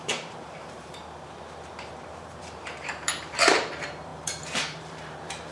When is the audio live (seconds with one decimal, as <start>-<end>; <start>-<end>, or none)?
1.0-1.7